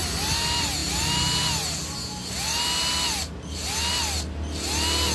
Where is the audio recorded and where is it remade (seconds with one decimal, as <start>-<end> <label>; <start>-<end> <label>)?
0.0-5.1 recorded